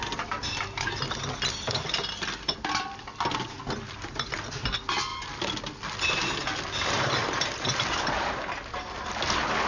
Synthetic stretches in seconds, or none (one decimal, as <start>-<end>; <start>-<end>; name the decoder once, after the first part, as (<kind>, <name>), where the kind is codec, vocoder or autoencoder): none